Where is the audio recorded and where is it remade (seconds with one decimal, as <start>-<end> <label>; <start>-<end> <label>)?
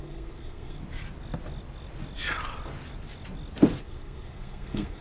0.0-0.8 remade; 0.8-3.8 recorded; 3.8-5.0 remade